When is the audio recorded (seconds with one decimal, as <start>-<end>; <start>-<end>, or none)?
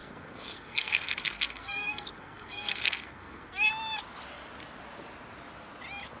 3.7-6.2